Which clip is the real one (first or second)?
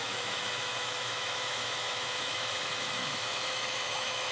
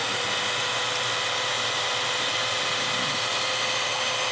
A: second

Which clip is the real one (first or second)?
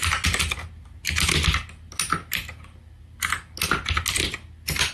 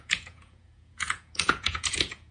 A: first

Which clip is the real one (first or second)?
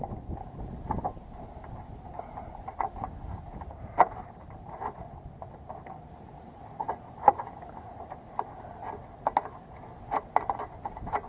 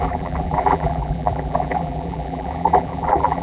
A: first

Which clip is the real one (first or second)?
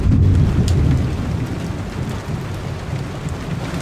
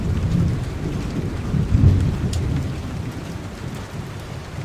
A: first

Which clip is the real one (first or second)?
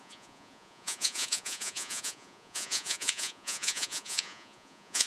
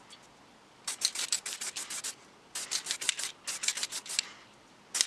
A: second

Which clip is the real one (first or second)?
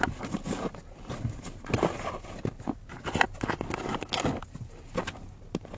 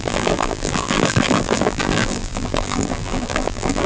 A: first